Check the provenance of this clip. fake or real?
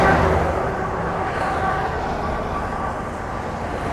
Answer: real